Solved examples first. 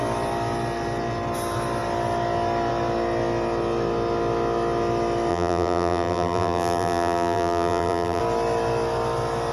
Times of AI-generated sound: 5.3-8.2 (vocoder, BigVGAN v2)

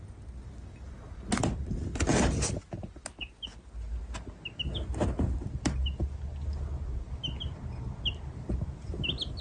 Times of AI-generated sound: none

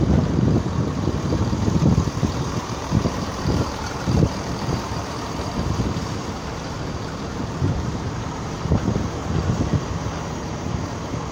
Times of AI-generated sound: 0.0-9.2 (vocoder, BigVGAN v2); 9.8-11.3